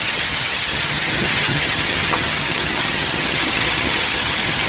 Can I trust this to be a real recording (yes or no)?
no